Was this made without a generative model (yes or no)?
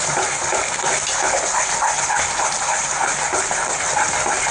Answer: yes